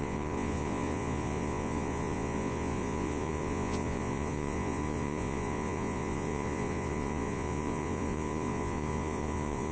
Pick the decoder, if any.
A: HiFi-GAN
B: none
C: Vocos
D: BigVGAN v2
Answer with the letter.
C